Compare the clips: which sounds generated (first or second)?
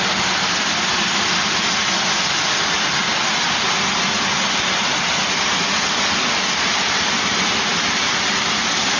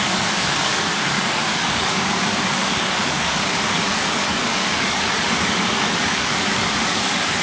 second